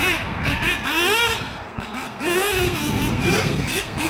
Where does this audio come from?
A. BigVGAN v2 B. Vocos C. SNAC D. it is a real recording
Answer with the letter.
C